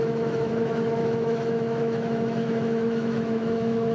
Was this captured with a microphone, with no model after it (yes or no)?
no